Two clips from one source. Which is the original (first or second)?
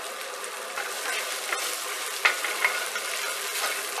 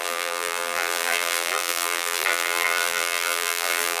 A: first